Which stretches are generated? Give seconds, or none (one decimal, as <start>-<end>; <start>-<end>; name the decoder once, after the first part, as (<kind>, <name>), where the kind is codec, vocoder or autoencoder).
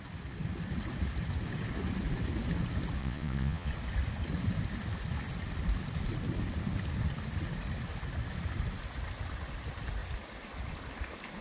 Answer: 3.0-3.7 (vocoder, Vocos)